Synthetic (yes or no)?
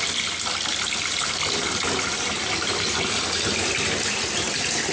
no